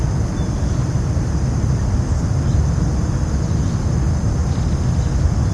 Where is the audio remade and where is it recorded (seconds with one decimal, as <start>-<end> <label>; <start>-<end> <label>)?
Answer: 0.0-5.5 recorded